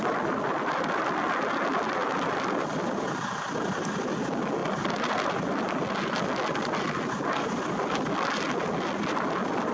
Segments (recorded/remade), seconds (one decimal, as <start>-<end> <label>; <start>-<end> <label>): 0.0-9.7 recorded